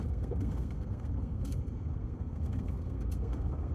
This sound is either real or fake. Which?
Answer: fake